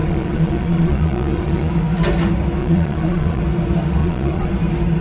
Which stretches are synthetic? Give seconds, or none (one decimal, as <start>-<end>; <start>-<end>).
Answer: 0.0-1.7; 2.6-3.4; 4.0-4.5

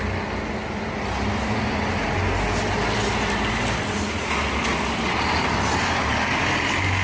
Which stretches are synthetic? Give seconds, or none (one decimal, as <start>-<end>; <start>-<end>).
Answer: none

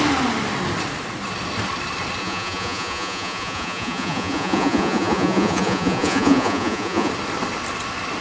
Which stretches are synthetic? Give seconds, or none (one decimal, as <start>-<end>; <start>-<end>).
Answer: 2.2-7.1